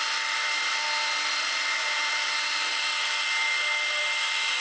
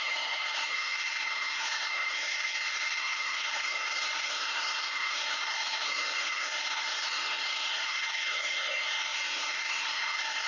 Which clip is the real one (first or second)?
first